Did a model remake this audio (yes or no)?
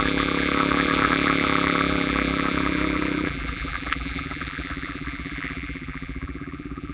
yes